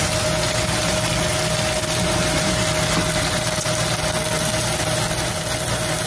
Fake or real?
real